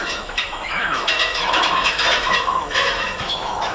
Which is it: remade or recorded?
remade